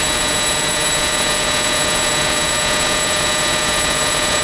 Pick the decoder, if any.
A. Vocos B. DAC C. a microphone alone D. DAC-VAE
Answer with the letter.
A